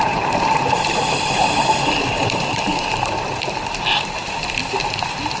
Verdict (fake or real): fake